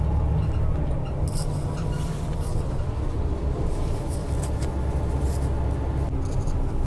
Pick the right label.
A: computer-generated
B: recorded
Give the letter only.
B